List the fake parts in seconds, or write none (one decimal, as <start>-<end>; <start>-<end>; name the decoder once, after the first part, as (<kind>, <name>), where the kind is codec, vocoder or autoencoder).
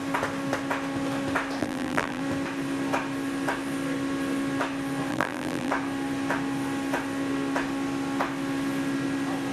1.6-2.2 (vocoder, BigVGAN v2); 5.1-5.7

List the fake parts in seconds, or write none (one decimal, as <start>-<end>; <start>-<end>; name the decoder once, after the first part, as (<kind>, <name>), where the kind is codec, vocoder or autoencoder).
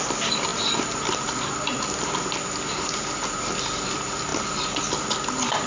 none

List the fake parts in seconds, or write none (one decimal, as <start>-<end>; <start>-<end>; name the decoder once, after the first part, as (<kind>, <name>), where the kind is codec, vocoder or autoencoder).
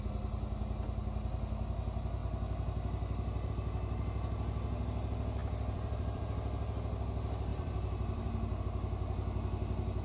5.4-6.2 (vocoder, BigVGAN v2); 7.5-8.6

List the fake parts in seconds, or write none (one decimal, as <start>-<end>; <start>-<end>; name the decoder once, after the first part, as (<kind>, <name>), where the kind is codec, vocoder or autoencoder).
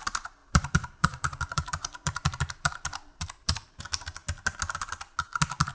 0.4-3.8 (vocoder, BigVGAN v2)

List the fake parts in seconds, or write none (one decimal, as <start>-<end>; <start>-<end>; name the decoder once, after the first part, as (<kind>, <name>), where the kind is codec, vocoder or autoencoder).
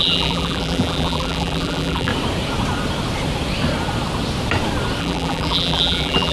0.0-2.1 (vocoder, BigVGAN v2); 5.0-6.3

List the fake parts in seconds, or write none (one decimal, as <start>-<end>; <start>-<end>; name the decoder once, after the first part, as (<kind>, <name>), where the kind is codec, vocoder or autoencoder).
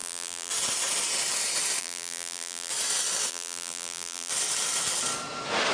0.0-0.5 (vocoder, BigVGAN v2); 1.8-2.7; 3.3-4.3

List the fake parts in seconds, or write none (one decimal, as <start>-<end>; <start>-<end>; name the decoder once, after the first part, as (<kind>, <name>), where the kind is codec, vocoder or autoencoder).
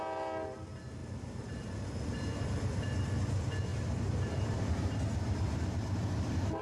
1.0-1.6 (vocoder, BigVGAN v2); 3.7-6.6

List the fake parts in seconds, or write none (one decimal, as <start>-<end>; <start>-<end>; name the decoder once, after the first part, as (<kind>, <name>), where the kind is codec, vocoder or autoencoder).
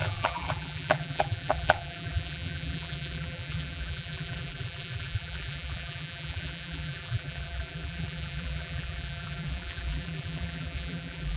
0.0-11.4 (vocoder, BigVGAN v2)